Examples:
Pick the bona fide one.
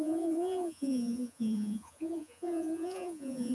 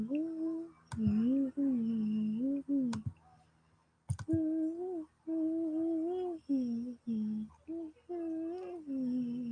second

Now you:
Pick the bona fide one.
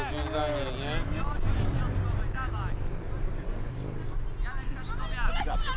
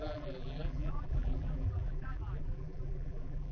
first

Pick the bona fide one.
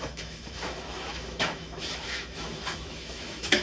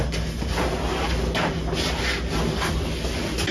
second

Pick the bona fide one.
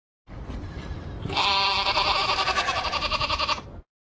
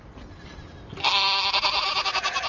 second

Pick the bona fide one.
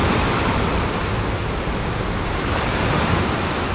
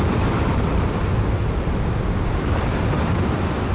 first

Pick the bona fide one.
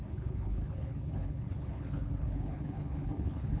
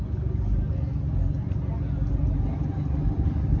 second